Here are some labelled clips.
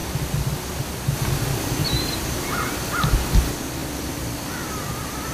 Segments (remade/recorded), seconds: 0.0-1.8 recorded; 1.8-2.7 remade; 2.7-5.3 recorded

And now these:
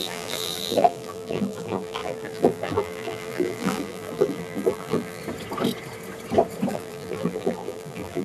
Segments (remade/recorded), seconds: 0.0-5.2 remade; 5.2-6.7 recorded; 6.7-8.2 remade

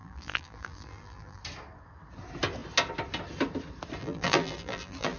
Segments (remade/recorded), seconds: 0.0-1.4 remade; 1.4-4.0 recorded; 4.0-5.2 remade

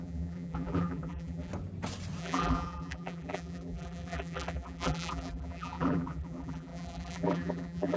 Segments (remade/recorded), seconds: 0.0-1.5 remade; 1.5-2.2 recorded; 2.2-8.0 remade